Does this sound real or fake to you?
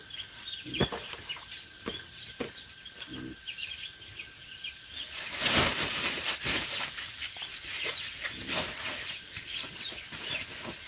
real